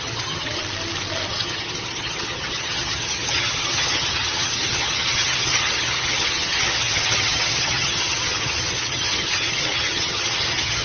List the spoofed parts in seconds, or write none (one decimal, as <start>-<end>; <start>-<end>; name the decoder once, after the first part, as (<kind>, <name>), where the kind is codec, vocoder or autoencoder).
0.0-0.6 (vocoder, HiFi-GAN); 1.3-10.8